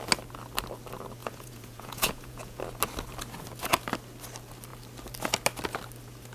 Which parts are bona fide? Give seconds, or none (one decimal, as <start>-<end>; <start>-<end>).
0.0-1.2; 2.6-6.3